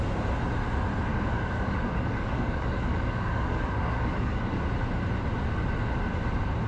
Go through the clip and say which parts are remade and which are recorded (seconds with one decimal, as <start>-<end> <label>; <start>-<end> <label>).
0.0-1.1 recorded; 1.1-4.6 remade; 4.6-6.7 recorded